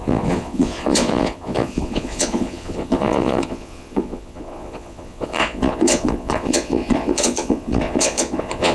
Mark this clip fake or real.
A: fake